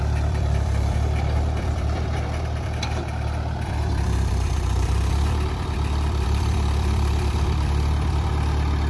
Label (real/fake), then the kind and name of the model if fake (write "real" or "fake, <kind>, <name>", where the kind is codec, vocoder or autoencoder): fake, vocoder, BigVGAN v2